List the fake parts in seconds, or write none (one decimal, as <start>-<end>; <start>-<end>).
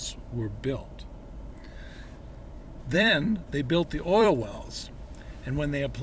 1.1-4.7